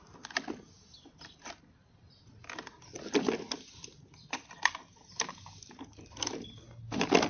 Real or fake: real